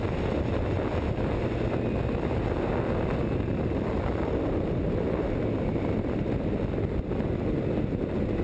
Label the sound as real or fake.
real